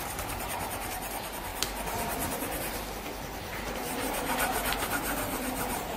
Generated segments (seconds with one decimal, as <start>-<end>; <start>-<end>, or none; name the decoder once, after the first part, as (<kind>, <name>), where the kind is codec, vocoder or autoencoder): 0.0-1.5 (vocoder, BigVGAN v2); 3.2-6.0